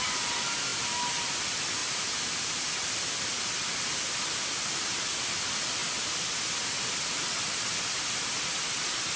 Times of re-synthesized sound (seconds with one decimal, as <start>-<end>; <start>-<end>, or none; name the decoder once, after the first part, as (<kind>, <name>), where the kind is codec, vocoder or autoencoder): 0.0-5.8 (vocoder, BigVGAN v2)

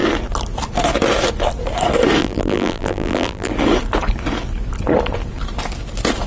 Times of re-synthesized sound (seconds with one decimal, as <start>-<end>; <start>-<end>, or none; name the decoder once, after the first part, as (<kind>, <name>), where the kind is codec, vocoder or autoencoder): 2.2-3.5 (vocoder, BigVGAN v2)

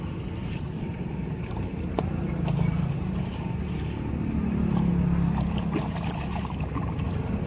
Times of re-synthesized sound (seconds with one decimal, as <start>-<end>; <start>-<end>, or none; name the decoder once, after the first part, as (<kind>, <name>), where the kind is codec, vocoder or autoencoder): 0.4-4.9 (vocoder, BigVGAN v2)